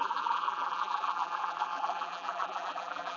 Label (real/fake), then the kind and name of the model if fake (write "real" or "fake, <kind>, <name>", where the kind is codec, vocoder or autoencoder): fake, vocoder, BigVGAN v2